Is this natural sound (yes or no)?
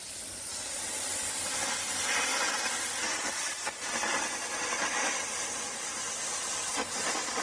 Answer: yes